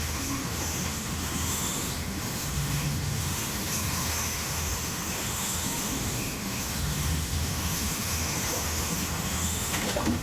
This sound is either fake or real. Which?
fake